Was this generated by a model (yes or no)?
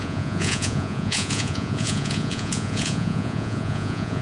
yes